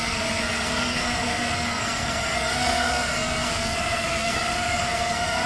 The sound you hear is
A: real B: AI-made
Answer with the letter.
B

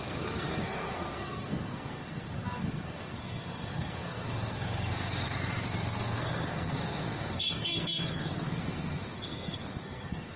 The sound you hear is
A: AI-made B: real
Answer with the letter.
A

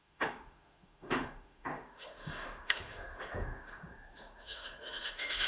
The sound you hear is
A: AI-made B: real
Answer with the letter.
A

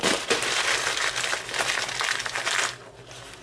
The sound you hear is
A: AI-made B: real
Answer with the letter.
B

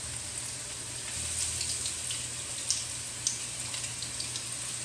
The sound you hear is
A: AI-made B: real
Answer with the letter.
B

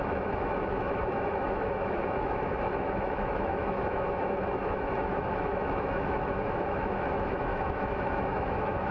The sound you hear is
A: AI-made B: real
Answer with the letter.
A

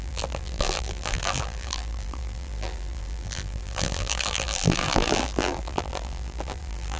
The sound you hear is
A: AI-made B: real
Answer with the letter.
A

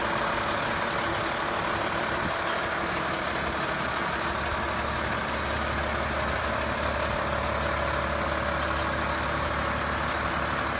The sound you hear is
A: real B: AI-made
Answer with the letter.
A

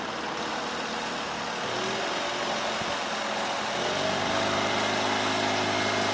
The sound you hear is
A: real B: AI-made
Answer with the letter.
A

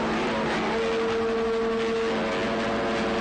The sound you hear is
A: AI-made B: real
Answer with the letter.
B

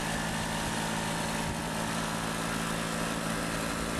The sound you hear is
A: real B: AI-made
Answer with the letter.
A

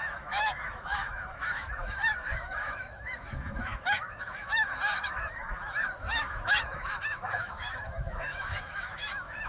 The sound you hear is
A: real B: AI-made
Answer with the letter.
B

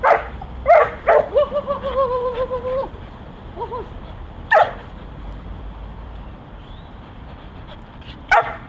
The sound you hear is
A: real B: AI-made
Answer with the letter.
B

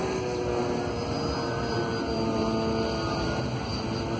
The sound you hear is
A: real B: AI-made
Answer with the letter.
A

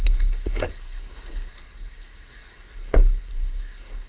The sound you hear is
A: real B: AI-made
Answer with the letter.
B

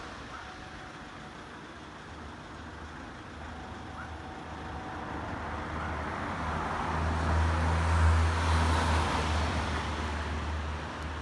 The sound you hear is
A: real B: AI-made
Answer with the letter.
A